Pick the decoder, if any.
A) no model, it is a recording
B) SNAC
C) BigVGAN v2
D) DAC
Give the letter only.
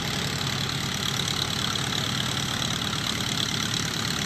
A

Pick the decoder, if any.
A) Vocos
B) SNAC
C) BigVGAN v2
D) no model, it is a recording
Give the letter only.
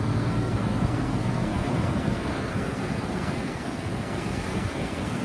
B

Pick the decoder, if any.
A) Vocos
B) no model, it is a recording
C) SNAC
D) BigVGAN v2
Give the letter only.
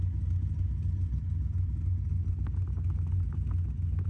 B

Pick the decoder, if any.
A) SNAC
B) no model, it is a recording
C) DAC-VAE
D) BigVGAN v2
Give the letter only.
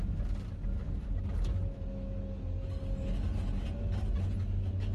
B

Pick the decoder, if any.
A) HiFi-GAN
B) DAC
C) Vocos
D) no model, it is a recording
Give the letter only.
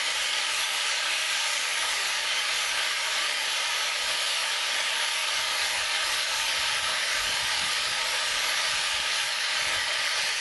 B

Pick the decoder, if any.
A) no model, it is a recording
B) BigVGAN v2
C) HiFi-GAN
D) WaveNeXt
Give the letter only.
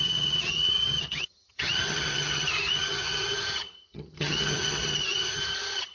C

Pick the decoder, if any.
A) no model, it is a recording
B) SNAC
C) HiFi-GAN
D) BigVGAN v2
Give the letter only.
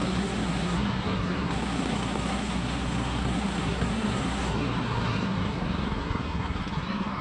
B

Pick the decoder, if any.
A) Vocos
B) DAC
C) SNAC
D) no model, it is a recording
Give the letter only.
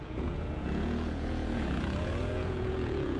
A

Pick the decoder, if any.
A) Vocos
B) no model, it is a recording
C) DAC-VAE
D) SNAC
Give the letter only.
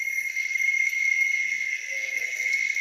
D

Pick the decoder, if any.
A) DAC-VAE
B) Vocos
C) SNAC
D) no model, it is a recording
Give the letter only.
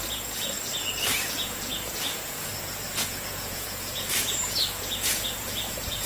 B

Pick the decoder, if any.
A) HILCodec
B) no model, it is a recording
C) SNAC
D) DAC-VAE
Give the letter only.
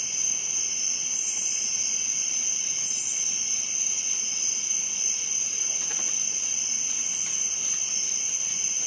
B